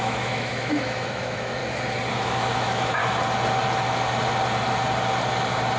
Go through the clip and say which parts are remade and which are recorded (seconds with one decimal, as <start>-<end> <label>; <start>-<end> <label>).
0.0-1.6 remade; 1.6-2.1 recorded; 2.1-3.0 remade; 3.0-5.8 recorded